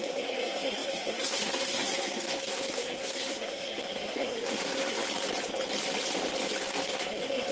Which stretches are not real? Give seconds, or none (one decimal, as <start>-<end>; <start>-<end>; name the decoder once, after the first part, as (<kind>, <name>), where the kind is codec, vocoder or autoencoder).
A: 0.0-5.0 (codec, SNAC); 6.6-7.5